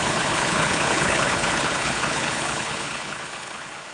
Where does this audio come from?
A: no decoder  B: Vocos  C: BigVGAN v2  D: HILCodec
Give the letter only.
D